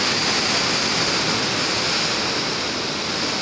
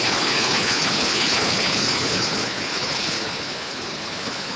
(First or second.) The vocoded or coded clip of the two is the second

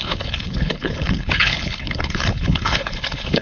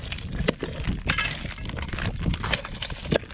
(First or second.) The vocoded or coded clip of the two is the first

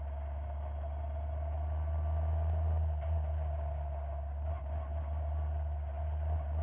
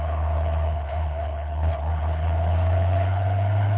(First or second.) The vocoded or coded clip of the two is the second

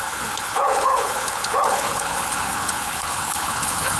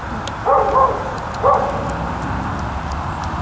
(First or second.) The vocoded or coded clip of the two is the first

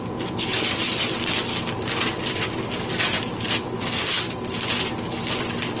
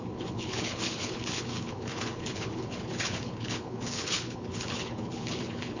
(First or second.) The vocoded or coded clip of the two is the second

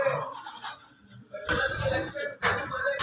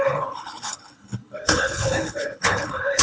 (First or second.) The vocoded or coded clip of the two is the second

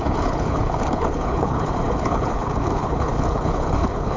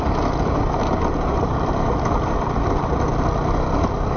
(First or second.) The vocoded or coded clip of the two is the first